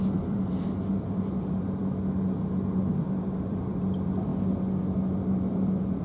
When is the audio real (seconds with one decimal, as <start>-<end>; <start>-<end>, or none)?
2.0-3.2; 4.3-5.5